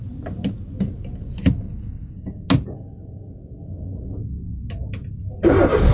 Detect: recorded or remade recorded